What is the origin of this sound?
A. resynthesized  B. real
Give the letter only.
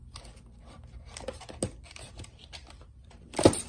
B